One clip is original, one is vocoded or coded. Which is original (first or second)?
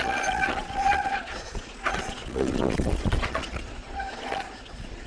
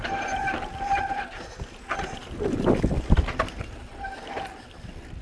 second